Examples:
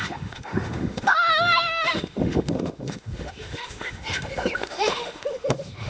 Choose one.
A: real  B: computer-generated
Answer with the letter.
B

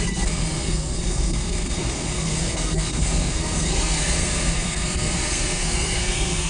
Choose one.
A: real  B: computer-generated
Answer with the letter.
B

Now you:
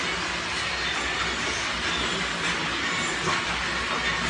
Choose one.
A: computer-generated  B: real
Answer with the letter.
B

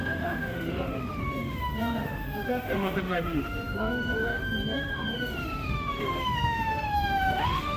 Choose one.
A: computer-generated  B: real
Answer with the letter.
A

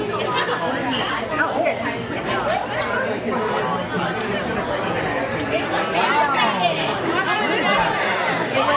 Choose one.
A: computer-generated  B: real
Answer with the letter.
B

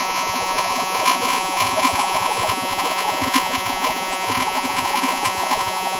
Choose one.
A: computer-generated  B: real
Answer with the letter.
A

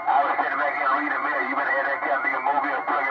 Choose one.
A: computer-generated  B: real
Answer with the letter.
A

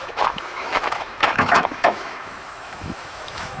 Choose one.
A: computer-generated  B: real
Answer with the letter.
A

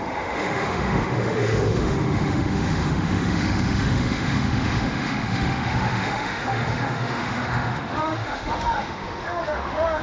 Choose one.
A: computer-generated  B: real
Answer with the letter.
A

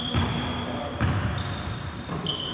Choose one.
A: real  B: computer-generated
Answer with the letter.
A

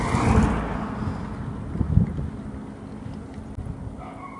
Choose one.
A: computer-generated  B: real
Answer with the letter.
B